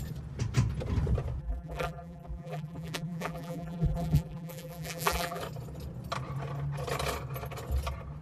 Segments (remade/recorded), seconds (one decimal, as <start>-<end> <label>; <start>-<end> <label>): 0.0-1.4 recorded; 1.4-5.4 remade; 5.4-8.2 recorded